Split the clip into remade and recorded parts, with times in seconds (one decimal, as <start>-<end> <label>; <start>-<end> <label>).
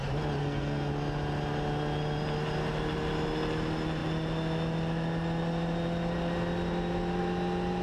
0.0-0.4 recorded; 0.4-0.9 remade; 0.9-7.8 recorded